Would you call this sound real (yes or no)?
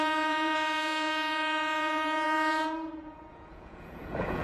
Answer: no